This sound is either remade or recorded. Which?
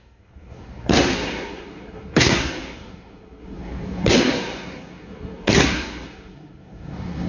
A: remade